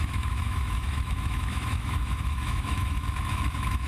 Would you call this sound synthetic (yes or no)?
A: yes